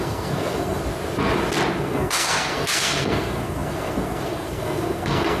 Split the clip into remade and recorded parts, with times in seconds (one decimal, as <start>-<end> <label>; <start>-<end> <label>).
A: 0.0-0.8 remade; 0.8-1.8 recorded; 1.8-5.4 remade